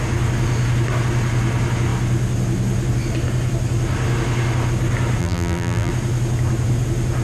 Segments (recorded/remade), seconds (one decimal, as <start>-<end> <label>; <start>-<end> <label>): 0.0-5.2 recorded; 5.2-5.9 remade; 5.9-7.2 recorded